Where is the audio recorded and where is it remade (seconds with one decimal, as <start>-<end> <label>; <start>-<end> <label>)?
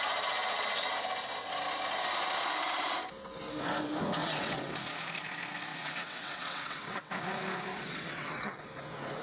0.0-4.2 recorded; 4.2-4.7 remade; 4.7-5.7 recorded; 5.7-7.1 remade; 7.1-7.7 recorded; 7.7-8.6 remade; 8.6-9.2 recorded